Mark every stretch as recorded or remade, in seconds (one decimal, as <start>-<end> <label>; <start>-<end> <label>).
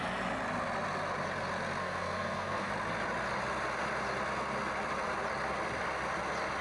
0.0-1.8 recorded; 1.8-2.7 remade; 2.7-6.6 recorded